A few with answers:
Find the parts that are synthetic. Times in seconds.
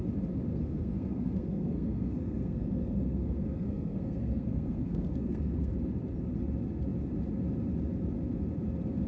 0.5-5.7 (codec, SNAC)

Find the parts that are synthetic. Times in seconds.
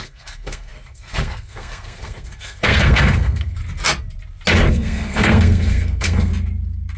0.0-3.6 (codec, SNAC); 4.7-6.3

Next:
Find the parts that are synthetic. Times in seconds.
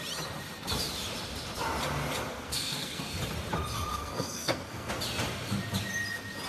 2.3-3.2 (codec, SNAC); 3.9-4.9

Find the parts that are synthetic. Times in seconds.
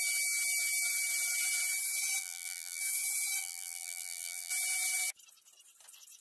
2.2-2.8 (vocoder, BigVGAN v2); 3.4-4.5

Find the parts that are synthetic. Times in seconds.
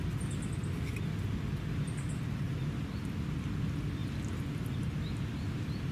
none